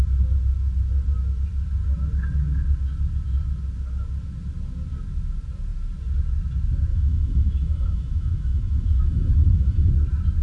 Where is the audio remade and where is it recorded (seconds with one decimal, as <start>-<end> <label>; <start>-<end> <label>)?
0.0-6.9 recorded; 6.9-9.9 remade; 9.9-10.4 recorded